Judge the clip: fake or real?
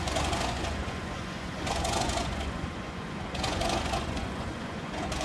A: fake